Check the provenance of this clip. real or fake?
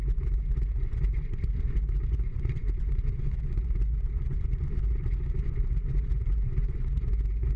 fake